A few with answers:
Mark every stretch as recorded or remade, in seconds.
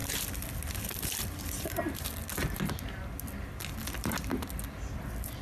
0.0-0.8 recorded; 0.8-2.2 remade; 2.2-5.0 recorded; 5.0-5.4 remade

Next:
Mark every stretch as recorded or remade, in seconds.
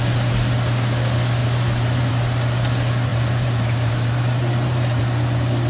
0.0-1.4 recorded; 1.4-2.1 remade; 2.1-3.1 recorded; 3.1-5.0 remade; 5.0-5.7 recorded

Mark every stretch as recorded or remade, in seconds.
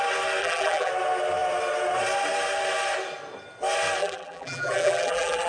0.0-0.4 recorded; 0.4-0.9 remade; 0.9-4.0 recorded; 4.0-5.5 remade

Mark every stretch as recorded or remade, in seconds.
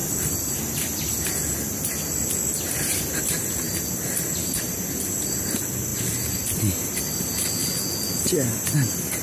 0.0-9.2 recorded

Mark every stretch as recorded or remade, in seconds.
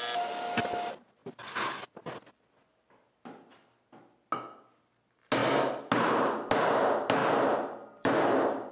0.0-1.2 recorded; 1.2-3.1 remade; 3.1-7.2 recorded; 7.2-8.7 remade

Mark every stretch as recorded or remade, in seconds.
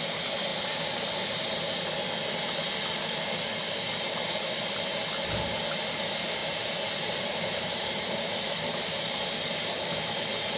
0.0-0.5 recorded; 0.5-1.8 remade; 1.8-6.4 recorded; 6.4-10.6 remade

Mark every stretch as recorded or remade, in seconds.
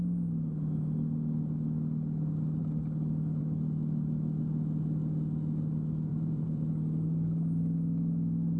0.0-6.1 recorded; 6.1-6.7 remade; 6.7-8.6 recorded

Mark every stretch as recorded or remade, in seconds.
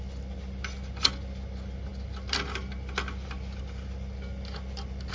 0.0-5.1 recorded